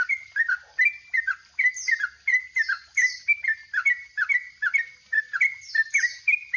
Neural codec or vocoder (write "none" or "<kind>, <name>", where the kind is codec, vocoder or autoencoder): none